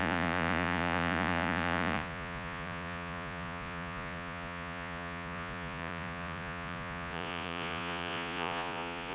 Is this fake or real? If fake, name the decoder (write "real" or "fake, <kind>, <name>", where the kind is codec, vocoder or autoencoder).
fake, vocoder, Vocos